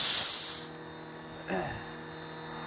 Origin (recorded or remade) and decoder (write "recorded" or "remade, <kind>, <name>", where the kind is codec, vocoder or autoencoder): recorded